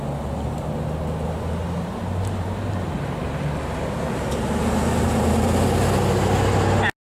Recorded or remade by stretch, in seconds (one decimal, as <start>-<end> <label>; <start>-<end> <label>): 0.0-1.6 recorded; 1.6-4.0 remade; 4.0-7.2 recorded